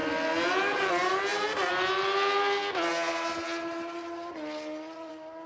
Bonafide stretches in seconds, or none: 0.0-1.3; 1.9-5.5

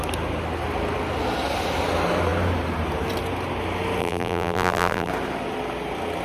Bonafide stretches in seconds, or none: 0.0-4.0; 5.1-6.2

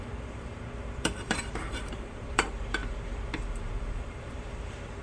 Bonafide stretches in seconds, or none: none

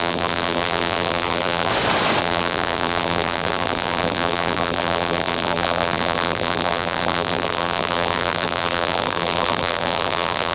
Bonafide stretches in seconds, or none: 1.7-2.2

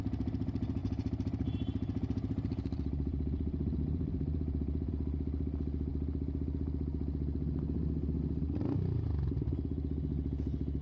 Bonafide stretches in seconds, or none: 0.0-0.8; 4.9-10.8

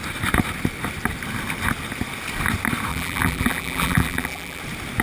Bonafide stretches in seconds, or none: 0.0-2.9; 4.6-5.0

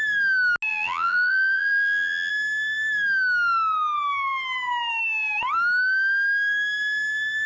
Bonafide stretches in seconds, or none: 0.0-0.7; 2.3-7.5

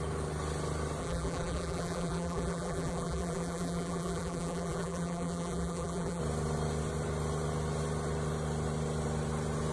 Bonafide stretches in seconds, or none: 0.0-1.0; 6.2-9.7